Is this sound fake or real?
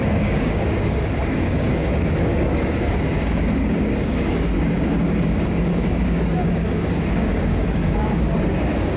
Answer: fake